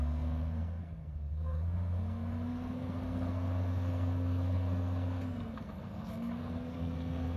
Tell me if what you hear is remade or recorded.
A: remade